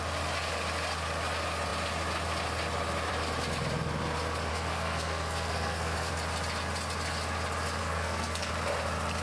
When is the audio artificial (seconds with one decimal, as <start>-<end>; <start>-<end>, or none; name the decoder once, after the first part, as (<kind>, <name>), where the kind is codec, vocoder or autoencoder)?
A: 4.5-6.1 (codec, SNAC); 7.8-8.5